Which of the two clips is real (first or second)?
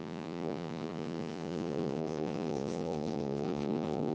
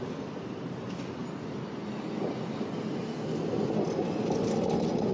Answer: second